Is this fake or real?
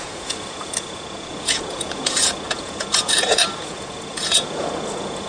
fake